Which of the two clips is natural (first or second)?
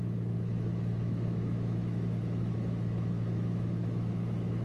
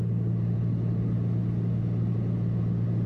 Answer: second